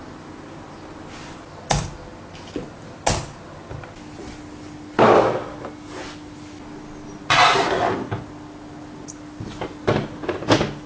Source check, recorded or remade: recorded